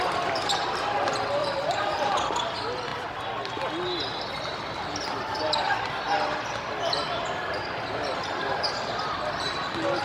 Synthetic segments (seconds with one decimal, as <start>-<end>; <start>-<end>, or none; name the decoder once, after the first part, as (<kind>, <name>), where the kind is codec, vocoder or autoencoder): 1.4-2.1 (vocoder, BigVGAN v2)